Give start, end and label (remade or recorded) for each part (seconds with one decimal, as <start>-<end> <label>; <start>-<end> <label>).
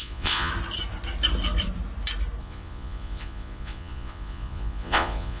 0.0-0.5 remade; 0.5-2.4 recorded; 2.4-5.4 remade